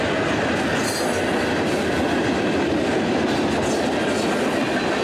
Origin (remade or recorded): recorded